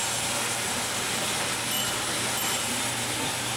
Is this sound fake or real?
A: real